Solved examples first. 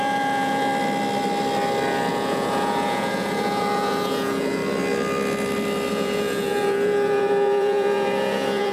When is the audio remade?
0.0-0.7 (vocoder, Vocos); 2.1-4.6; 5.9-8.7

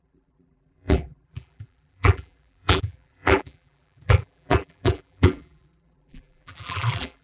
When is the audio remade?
0.0-7.2 (vocoder, BigVGAN v2)

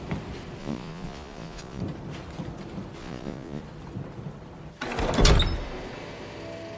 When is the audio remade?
0.6-1.8 (vocoder, Vocos); 3.0-3.6

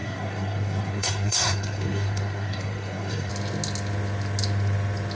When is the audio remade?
0.0-3.3 (codec, SNAC)

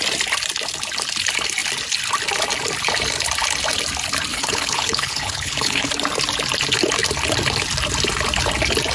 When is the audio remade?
4.3-5.9 (codec, HILCodec)

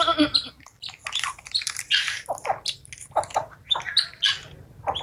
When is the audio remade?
none

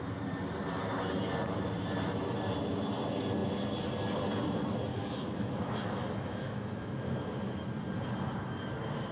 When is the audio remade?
4.9-7.0 (autoencoder, DAC-VAE)